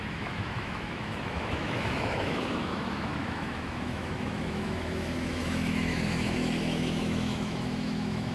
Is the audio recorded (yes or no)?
no